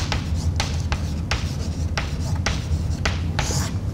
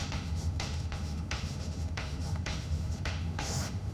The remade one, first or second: second